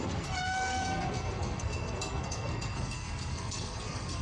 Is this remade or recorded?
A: remade